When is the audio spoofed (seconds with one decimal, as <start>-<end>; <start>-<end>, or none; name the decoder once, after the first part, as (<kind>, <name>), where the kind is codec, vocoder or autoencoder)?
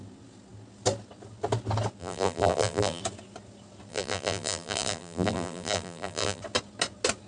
2.0-3.0 (vocoder, BigVGAN v2); 3.9-6.4